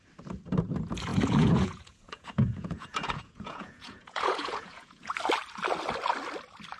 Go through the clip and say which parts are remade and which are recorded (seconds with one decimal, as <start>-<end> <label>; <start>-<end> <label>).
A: 0.0-1.1 recorded; 1.1-5.2 remade; 5.2-6.8 recorded